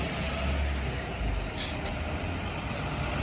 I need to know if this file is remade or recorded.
recorded